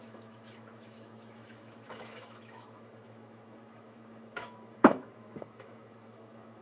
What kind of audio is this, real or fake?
fake